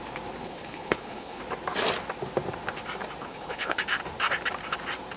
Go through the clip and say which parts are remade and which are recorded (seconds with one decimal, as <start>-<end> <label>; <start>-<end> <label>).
0.0-0.4 recorded; 0.4-1.4 remade; 1.4-3.2 recorded; 3.2-3.8 remade; 3.8-5.2 recorded